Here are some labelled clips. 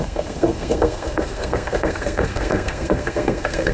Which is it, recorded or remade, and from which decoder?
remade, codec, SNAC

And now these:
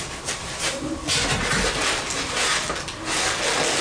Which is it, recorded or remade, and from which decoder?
recorded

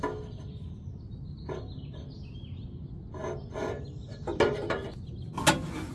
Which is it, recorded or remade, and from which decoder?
recorded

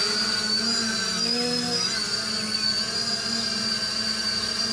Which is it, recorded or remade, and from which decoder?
recorded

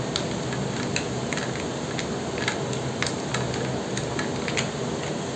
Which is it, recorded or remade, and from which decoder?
recorded